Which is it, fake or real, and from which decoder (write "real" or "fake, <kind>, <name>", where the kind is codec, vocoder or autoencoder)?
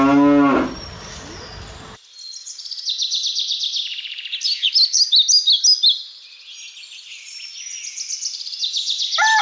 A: real